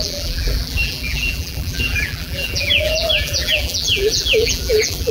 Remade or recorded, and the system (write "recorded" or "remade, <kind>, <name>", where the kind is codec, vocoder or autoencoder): remade, vocoder, BigVGAN v2